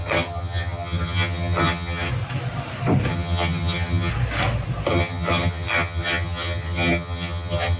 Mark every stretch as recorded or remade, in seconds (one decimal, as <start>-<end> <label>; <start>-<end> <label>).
0.0-2.1 remade; 2.1-3.1 recorded; 3.1-4.1 remade; 4.1-4.9 recorded; 4.9-7.8 remade